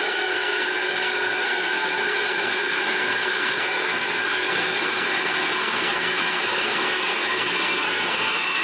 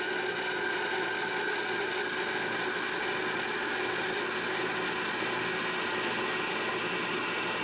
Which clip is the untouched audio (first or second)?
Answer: second